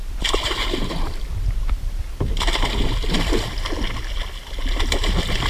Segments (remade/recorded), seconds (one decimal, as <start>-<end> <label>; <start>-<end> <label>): 0.0-1.1 remade; 1.1-5.5 recorded